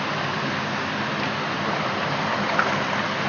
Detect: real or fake real